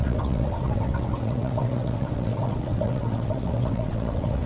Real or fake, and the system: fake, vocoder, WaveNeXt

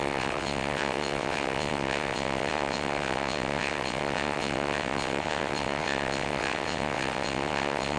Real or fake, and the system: fake, vocoder, WaveNeXt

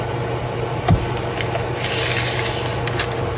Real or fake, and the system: real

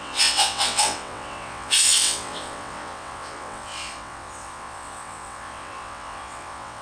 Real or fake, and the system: fake, vocoder, WaveNeXt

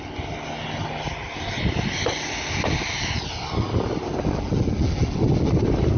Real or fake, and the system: real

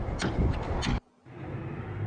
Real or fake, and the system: real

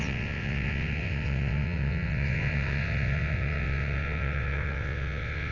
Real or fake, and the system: fake, vocoder, WaveNeXt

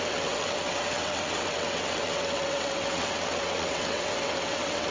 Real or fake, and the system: fake, vocoder, WaveNeXt